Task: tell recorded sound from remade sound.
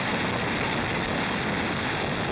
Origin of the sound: recorded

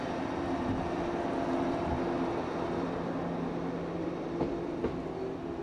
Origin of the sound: recorded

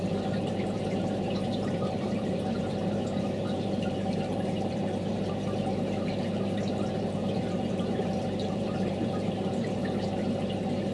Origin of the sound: remade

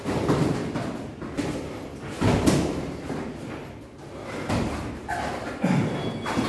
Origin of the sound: recorded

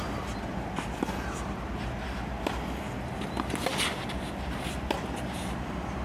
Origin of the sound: recorded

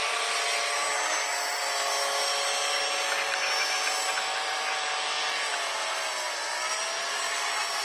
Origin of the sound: recorded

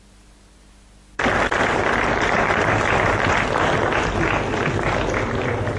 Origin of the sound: recorded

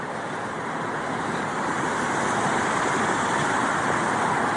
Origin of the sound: recorded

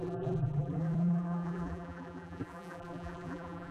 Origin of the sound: remade